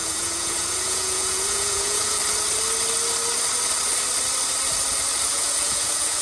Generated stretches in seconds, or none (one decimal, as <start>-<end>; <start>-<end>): 0.0-2.2; 5.3-6.2